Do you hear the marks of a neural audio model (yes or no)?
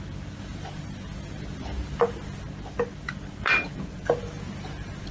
no